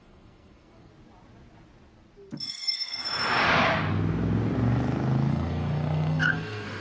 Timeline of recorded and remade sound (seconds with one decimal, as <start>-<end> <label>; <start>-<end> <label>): 0.0-0.9 remade; 0.9-2.5 recorded; 2.5-3.0 remade; 3.0-5.3 recorded; 5.3-6.8 remade